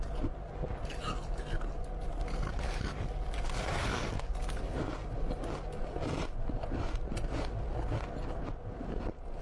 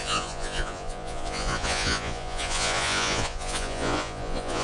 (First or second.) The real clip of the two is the first